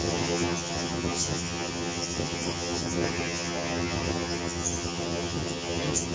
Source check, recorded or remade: remade